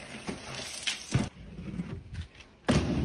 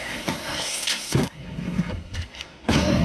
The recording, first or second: first